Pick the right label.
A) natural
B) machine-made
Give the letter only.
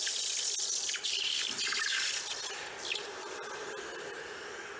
A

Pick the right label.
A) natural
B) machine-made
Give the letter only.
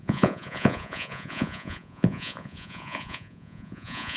B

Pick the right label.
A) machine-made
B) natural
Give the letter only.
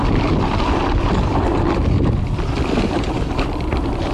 B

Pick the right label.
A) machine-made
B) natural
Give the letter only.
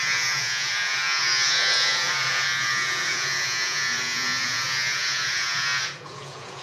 A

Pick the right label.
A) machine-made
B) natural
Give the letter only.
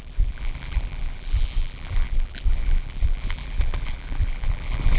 A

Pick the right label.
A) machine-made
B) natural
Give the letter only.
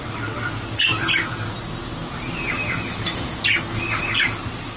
B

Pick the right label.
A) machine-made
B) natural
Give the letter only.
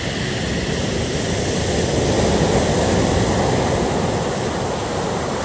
B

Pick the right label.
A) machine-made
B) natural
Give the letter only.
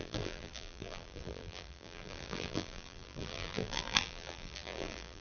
A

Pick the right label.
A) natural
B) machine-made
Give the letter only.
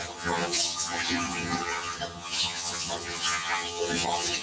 B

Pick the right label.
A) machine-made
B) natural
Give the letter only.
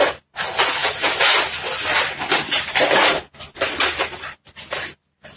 B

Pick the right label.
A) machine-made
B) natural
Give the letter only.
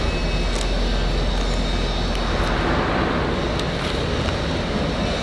B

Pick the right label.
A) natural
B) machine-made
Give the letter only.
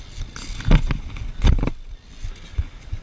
A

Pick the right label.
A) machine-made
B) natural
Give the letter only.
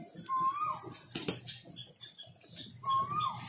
B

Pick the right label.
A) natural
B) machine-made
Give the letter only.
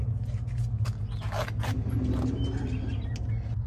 A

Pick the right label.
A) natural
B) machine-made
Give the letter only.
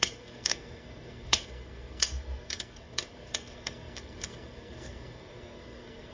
B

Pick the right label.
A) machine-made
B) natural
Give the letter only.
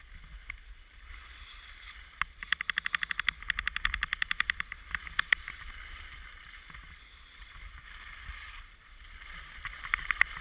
B